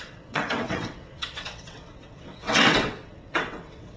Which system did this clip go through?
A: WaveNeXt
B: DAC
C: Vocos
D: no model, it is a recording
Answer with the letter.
A